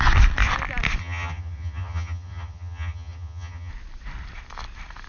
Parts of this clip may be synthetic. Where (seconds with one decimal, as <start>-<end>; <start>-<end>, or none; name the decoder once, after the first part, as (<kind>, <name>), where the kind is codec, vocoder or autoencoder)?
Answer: 1.0-3.7 (vocoder, HiFi-GAN)